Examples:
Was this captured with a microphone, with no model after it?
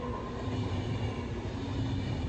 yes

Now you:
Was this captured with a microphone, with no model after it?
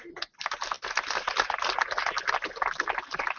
yes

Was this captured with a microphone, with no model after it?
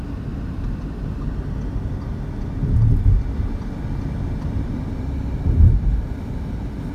yes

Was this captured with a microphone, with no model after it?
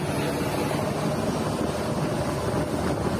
yes